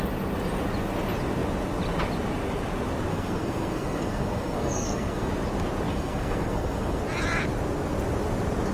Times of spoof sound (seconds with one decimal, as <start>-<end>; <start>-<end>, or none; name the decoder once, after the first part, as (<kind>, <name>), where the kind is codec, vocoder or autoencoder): 3.1-5.3 (codec, SNAC); 5.9-7.0